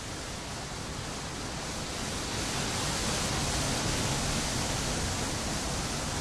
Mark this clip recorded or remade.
recorded